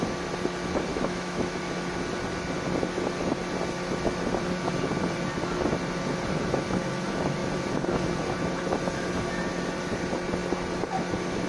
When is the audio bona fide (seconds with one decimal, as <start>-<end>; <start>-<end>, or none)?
0.0-0.9; 1.6-11.5